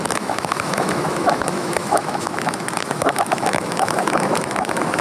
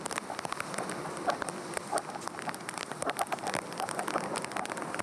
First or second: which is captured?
second